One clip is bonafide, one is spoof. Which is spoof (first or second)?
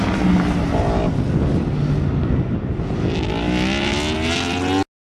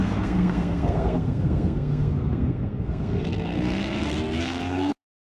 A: second